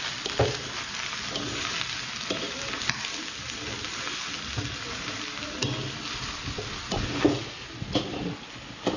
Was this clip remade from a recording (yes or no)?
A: no